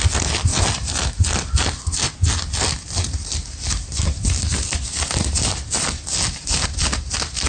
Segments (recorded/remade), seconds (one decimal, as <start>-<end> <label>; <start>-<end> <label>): 0.0-7.5 recorded